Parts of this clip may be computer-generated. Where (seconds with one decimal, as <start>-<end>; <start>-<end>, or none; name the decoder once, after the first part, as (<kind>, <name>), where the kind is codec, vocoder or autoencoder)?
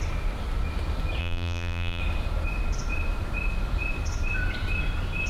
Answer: 1.2-2.0 (vocoder, BigVGAN v2)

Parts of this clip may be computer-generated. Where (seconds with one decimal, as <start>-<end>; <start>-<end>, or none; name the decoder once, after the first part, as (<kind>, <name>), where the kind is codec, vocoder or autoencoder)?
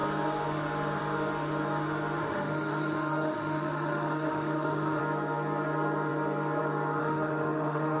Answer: 2.2-5.0 (autoencoder, DAC-VAE); 7.0-8.0